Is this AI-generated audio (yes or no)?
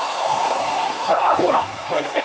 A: yes